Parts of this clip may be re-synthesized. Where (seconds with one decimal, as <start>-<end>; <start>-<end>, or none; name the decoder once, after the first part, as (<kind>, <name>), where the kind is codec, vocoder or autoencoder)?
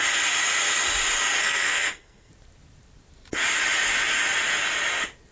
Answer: 1.4-2.3 (codec, SNAC)